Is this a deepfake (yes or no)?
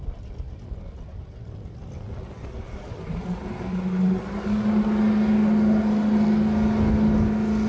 no